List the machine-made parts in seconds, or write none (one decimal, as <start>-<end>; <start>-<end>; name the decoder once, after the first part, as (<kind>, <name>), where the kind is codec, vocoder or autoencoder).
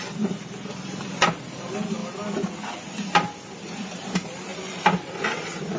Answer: 4.5-5.8 (vocoder, BigVGAN v2)